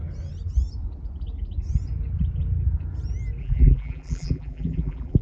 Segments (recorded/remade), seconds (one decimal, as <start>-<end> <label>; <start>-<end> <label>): 0.0-3.4 recorded; 3.4-5.2 remade